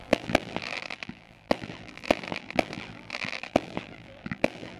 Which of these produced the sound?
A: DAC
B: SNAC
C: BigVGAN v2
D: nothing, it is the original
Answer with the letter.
C